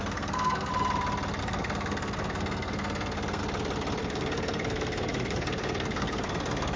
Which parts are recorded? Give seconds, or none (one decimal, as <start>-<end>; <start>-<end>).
0.7-1.4; 3.4-4.0